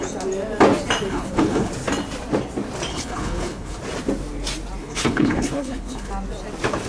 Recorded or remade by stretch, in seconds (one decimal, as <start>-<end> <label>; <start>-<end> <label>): 0.0-1.1 recorded; 1.1-1.7 remade; 1.7-2.9 recorded; 2.9-3.8 remade; 3.8-4.8 recorded; 4.8-6.1 remade; 6.1-6.9 recorded